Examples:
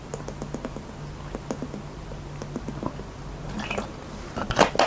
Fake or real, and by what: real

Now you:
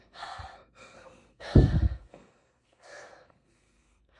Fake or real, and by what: fake, codec, SNAC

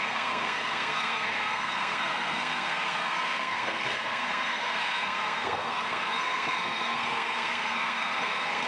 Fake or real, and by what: fake, codec, SNAC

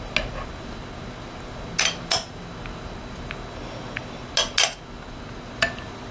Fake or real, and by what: real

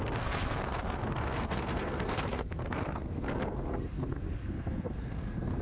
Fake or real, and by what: fake, codec, SNAC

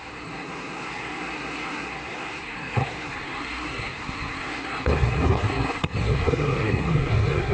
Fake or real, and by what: fake, codec, SNAC